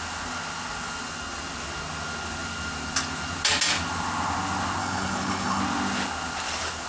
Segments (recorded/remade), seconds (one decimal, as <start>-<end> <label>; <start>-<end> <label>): 0.0-4.8 recorded; 4.8-5.6 remade; 5.6-6.9 recorded